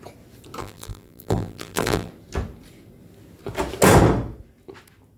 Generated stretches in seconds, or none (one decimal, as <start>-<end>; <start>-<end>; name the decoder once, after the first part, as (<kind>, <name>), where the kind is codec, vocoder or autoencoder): 0.6-2.1 (vocoder, BigVGAN v2)